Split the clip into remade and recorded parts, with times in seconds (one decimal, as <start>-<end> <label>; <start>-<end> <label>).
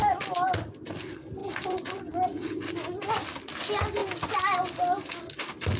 0.0-1.4 recorded; 1.4-1.9 remade; 1.9-4.0 recorded; 4.0-5.1 remade; 5.1-5.8 recorded